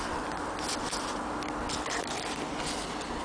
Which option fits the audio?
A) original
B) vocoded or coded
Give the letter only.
A